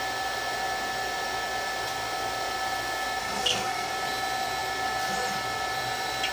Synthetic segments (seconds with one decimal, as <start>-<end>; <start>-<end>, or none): 3.2-3.9